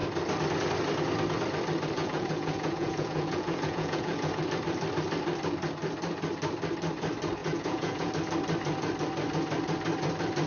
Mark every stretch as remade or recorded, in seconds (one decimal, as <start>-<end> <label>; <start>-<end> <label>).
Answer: 0.0-2.0 recorded; 2.0-4.4 remade; 4.4-7.4 recorded; 7.4-8.1 remade; 8.1-10.5 recorded